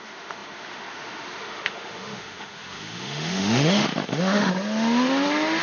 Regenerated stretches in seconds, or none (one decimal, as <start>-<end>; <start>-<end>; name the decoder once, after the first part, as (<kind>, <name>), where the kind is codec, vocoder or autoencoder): 0.0-4.5 (autoencoder, DAC-VAE)